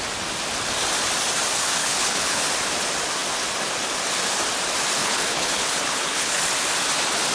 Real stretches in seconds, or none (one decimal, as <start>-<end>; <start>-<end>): 0.0-1.8; 2.4-5.0; 6.4-7.3